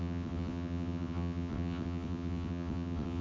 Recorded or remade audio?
remade